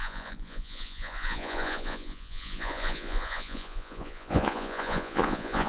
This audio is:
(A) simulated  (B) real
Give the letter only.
A